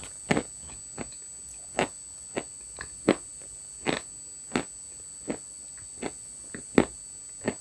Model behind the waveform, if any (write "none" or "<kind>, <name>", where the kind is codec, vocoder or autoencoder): none